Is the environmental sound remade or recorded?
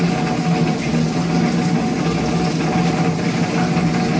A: recorded